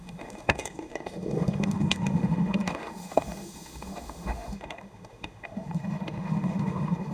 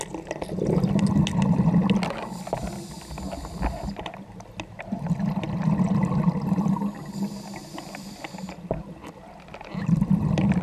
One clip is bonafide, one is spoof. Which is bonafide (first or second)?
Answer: second